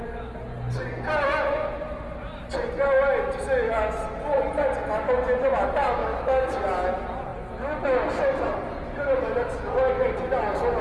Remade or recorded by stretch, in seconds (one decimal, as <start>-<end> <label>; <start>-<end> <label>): 0.0-6.0 recorded; 6.0-6.6 remade; 6.6-10.8 recorded